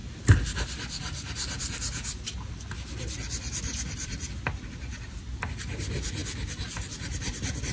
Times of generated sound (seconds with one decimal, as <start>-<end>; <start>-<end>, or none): none